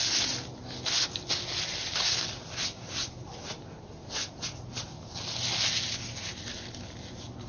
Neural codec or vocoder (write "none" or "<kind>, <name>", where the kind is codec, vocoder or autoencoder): none